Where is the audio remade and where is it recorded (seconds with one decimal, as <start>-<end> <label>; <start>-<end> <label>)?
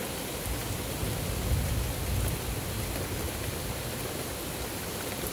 0.0-5.3 remade